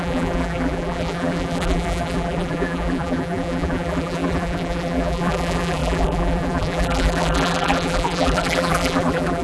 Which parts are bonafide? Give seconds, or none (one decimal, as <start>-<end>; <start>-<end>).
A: none